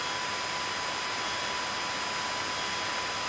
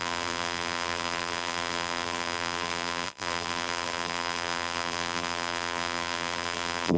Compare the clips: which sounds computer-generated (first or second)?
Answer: second